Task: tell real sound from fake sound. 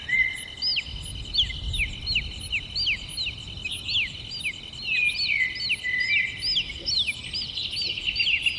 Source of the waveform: real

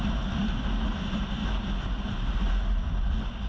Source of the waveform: real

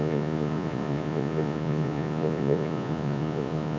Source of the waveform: fake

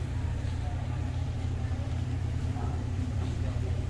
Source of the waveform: fake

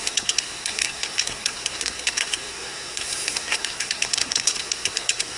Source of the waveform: fake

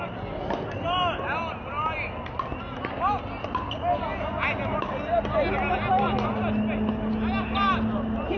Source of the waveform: real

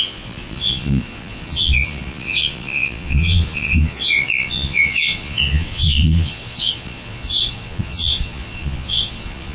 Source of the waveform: fake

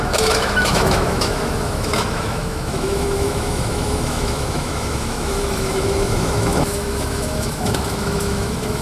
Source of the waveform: fake